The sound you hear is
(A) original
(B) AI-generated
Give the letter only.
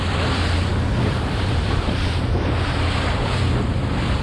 B